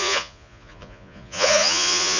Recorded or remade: remade